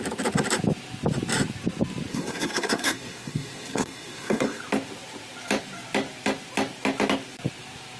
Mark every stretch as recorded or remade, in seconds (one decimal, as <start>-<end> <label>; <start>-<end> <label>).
0.0-2.1 recorded; 2.1-4.6 remade; 4.6-8.0 recorded